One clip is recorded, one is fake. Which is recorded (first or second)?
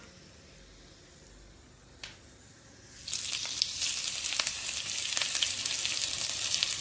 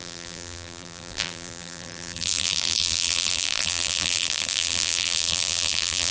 first